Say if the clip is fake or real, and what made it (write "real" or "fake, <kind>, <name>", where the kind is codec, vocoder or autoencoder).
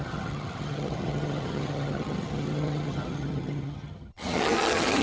fake, vocoder, HiFi-GAN